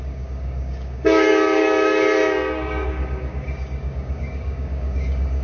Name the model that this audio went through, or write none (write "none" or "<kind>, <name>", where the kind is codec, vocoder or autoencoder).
codec, DAC